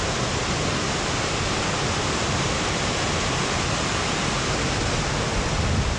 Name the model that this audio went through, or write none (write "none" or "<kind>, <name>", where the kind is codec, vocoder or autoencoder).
none